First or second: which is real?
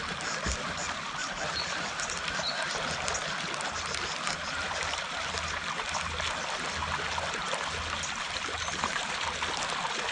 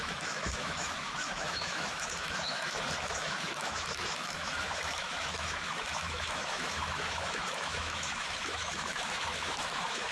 first